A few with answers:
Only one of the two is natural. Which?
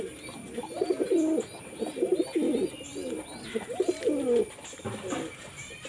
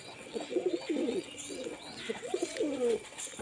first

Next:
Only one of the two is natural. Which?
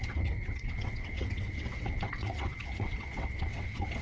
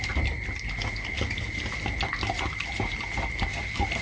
second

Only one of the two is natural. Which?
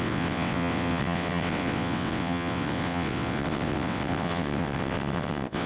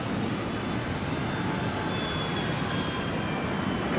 second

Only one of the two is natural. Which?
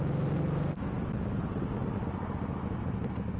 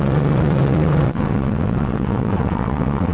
first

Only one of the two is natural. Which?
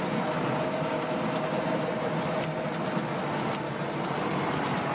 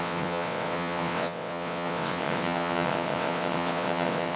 first